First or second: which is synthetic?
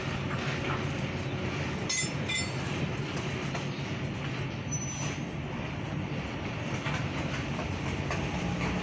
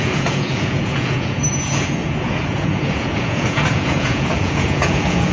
second